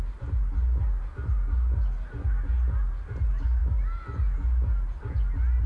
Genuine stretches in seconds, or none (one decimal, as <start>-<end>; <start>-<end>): 0.0-5.7